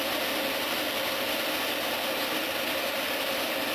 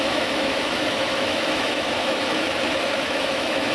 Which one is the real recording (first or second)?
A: first